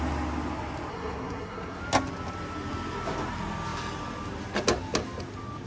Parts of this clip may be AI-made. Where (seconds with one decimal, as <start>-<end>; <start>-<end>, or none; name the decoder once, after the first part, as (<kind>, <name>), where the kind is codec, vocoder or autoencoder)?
0.9-1.8 (codec, SNAC)